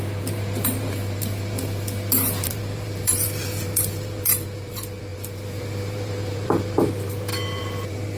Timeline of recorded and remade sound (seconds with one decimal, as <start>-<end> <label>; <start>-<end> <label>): 0.0-8.2 remade

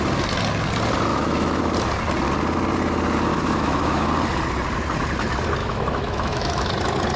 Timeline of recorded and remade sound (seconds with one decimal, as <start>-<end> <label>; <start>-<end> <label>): 0.0-1.1 recorded; 1.1-1.6 remade; 1.6-3.3 recorded; 3.3-4.1 remade; 4.1-5.6 recorded; 5.6-6.7 remade; 6.7-7.2 recorded

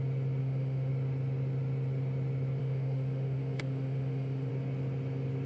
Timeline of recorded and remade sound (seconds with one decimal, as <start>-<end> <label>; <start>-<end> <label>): 0.0-0.4 recorded; 0.4-0.9 remade; 0.9-2.6 recorded; 2.6-4.5 remade; 4.5-5.5 recorded

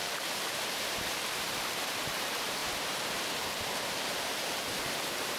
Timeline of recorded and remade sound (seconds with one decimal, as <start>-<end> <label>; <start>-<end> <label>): 0.0-5.4 remade

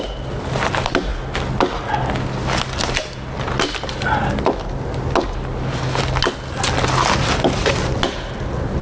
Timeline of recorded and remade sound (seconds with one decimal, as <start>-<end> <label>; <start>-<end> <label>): 0.0-8.8 recorded

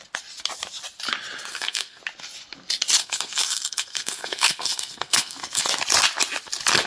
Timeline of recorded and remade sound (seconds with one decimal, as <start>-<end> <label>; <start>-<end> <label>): 0.0-1.5 recorded; 1.5-2.0 remade; 2.0-3.0 recorded; 3.0-5.6 remade; 5.6-6.9 recorded